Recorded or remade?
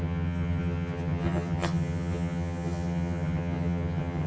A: remade